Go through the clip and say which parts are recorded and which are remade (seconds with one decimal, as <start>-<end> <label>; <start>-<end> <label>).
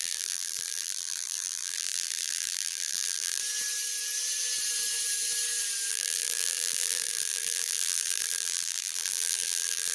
0.0-3.4 remade; 3.4-5.9 recorded; 5.9-9.9 remade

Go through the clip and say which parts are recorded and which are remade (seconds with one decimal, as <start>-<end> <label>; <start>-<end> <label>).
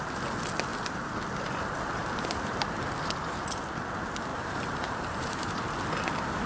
0.0-2.0 recorded; 2.0-2.8 remade; 2.8-4.3 recorded; 4.3-5.7 remade; 5.7-6.5 recorded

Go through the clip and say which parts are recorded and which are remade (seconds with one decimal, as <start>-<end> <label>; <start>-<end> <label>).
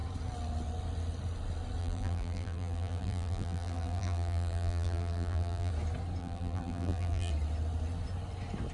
0.0-1.8 recorded; 1.8-5.7 remade; 5.7-6.2 recorded; 6.2-7.3 remade; 7.3-8.7 recorded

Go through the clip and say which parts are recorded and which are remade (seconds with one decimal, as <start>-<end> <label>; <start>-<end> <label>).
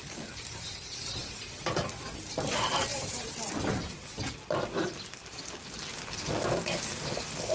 0.0-2.9 recorded; 2.9-3.5 remade; 3.5-7.5 recorded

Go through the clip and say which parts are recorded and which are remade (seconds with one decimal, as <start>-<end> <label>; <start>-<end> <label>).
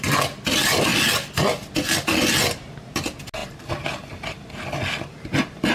0.0-5.7 recorded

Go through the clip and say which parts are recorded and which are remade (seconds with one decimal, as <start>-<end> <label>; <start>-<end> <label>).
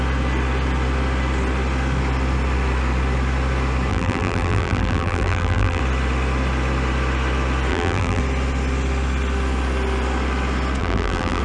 0.0-3.9 recorded; 3.9-5.8 remade; 5.8-7.7 recorded; 7.7-8.2 remade; 8.2-10.8 recorded; 10.8-11.4 remade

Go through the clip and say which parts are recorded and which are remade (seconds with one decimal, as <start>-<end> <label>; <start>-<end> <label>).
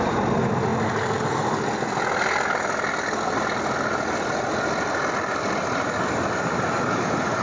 0.0-7.4 recorded